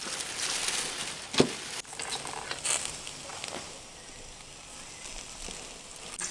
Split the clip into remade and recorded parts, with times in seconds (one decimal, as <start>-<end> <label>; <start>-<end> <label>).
0.0-6.3 recorded